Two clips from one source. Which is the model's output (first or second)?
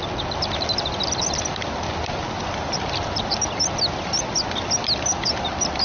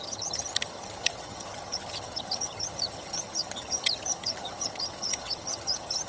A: second